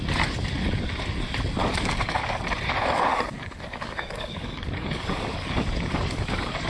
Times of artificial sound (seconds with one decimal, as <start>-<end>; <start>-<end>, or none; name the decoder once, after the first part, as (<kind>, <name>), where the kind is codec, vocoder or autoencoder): 1.6-2.4 (codec, DAC); 3.1-6.7